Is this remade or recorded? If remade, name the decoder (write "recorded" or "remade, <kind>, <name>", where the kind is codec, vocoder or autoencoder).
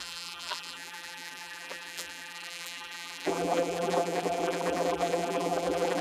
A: remade, vocoder, BigVGAN v2